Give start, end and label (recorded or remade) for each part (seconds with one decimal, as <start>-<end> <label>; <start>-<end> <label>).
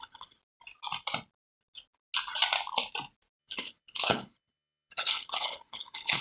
0.0-0.4 remade; 0.4-3.4 recorded; 3.4-6.2 remade